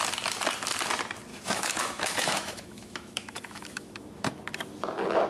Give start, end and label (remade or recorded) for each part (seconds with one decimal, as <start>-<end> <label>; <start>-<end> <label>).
0.0-1.3 recorded; 1.3-4.4 remade; 4.4-5.3 recorded